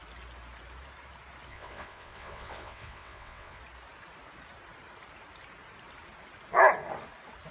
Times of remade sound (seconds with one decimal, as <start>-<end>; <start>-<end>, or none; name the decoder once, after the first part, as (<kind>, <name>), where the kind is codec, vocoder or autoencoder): 1.5-3.6 (vocoder, WaveNeXt)